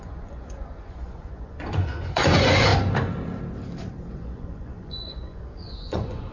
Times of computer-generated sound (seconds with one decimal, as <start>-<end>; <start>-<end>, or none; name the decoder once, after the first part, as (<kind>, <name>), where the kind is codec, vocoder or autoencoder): 0.0-2.7 (vocoder, Vocos); 4.1-6.3